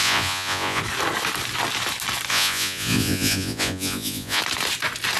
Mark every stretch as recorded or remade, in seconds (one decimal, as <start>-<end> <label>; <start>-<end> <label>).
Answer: 0.0-0.8 remade; 0.8-2.3 recorded; 2.3-4.4 remade; 4.4-5.2 recorded